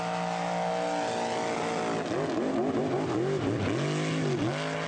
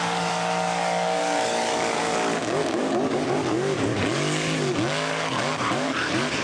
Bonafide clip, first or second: first